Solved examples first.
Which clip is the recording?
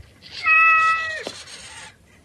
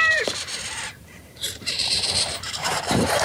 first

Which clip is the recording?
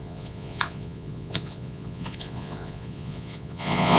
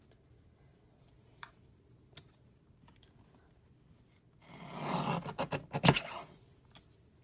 second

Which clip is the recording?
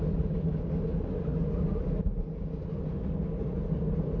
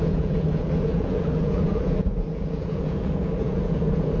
first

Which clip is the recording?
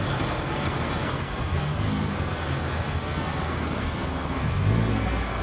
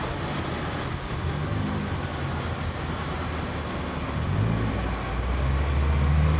second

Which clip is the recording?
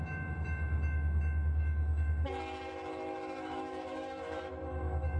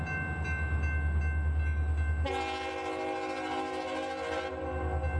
second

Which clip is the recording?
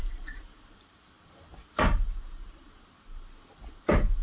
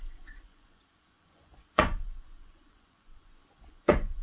first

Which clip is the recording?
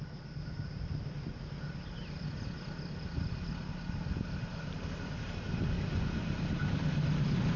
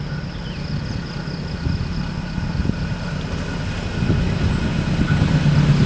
second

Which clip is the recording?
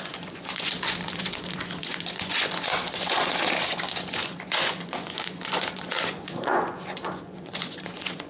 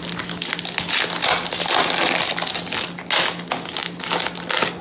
second